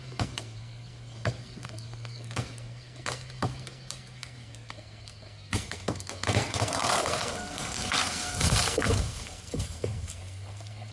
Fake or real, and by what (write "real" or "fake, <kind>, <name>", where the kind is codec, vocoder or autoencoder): fake, codec, SNAC